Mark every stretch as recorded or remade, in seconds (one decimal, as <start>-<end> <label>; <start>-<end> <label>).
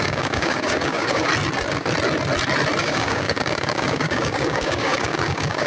0.0-1.3 remade; 1.3-2.8 recorded; 2.8-5.7 remade